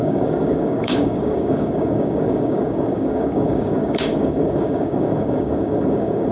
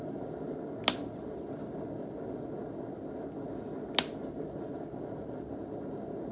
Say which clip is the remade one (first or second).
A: first